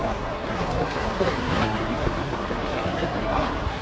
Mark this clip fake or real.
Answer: fake